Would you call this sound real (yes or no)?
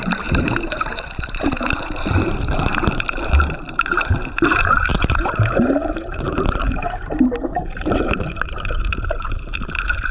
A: no